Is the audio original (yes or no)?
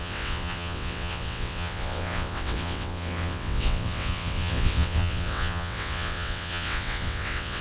no